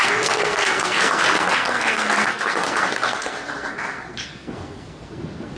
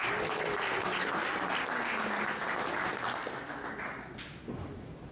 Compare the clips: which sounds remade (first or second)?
first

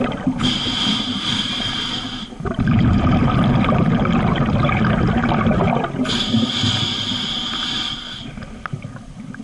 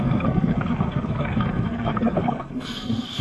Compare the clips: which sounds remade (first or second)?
second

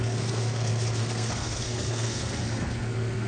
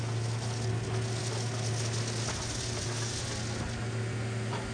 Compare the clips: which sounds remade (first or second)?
first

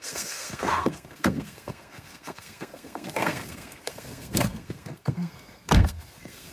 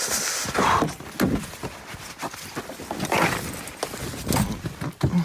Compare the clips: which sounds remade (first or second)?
first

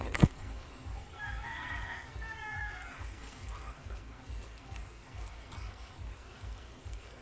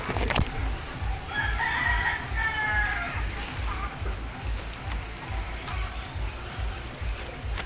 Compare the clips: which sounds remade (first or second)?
first